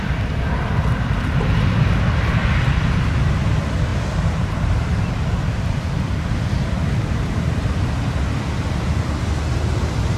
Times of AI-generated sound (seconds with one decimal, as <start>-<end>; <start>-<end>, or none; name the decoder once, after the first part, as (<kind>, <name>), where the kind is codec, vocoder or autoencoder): 3.9-5.0 (vocoder, BigVGAN v2)